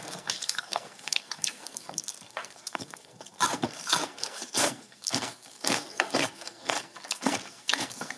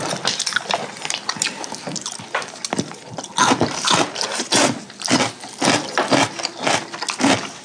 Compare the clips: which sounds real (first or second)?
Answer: second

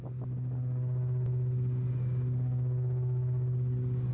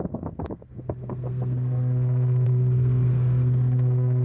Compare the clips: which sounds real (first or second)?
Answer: first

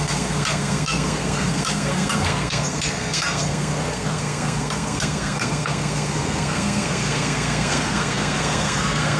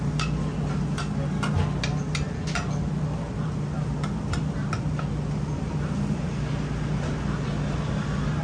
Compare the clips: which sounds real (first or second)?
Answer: second